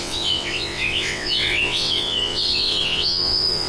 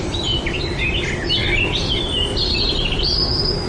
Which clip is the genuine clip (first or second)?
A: second